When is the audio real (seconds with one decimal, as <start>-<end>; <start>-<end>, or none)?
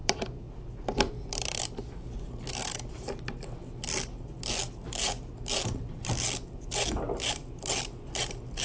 1.8-8.6